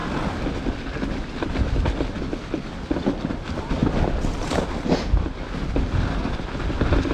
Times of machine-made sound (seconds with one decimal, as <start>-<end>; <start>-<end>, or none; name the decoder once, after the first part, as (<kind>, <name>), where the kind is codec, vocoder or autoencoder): none